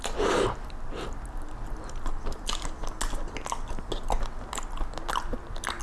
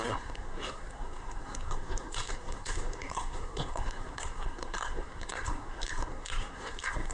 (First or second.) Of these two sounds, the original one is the first